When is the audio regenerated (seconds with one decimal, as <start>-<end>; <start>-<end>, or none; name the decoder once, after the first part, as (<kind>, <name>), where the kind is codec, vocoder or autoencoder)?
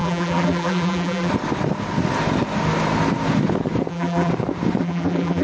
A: 0.0-1.3 (vocoder, BigVGAN v2); 3.9-4.3; 4.8-5.4